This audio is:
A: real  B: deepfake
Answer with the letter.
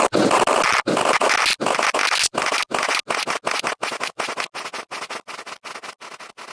A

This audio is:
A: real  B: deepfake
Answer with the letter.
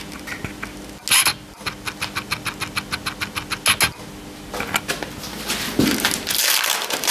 A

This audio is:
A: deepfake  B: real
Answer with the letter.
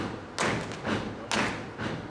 B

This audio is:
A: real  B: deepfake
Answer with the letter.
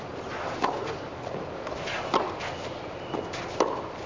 A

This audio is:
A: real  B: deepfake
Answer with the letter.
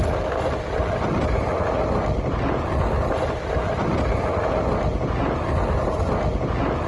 A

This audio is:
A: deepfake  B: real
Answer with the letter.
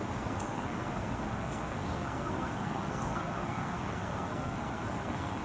A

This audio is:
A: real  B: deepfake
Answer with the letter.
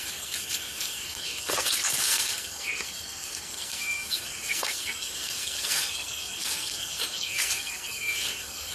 B